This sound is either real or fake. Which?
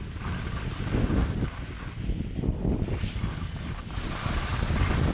real